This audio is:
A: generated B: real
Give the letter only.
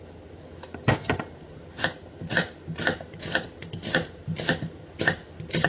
B